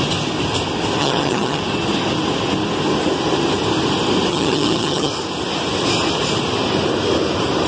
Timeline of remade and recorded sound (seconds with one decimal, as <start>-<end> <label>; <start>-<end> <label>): 0.0-1.0 recorded; 1.0-1.6 remade; 1.6-4.3 recorded; 4.3-5.1 remade; 5.1-7.7 recorded